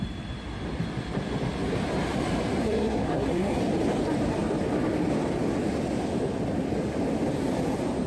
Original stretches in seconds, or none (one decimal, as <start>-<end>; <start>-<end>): 0.0-2.6; 3.6-8.1